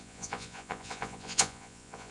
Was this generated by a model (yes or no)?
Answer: yes